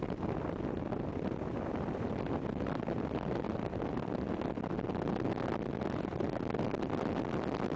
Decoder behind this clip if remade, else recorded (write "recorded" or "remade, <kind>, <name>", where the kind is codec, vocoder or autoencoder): recorded